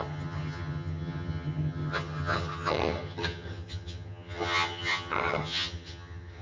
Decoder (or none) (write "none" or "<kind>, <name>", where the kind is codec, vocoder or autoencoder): vocoder, HiFi-GAN